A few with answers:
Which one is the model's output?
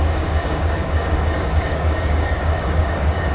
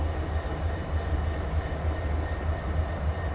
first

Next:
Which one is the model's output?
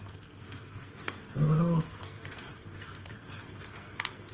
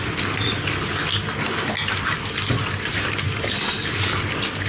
first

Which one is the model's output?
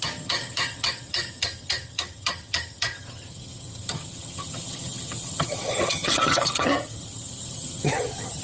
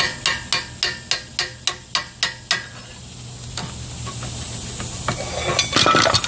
first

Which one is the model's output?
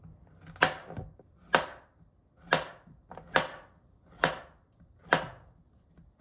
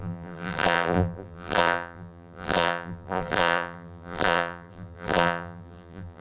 second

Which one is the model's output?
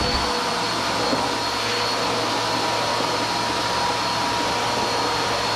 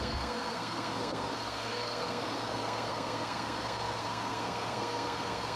second